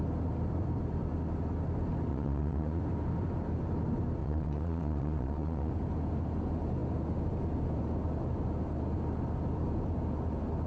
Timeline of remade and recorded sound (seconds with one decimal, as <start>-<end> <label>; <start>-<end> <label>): 0.0-2.1 recorded; 2.1-2.8 remade; 2.8-4.2 recorded; 4.2-5.7 remade; 5.7-10.7 recorded